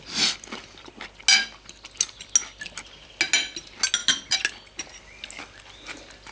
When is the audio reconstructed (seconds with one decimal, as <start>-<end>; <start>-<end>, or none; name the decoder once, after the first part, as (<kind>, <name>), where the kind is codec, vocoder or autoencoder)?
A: none